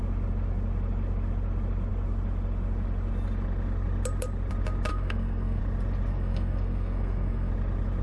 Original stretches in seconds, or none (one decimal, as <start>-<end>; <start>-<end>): 0.0-4.9; 5.6-6.1; 7.5-8.0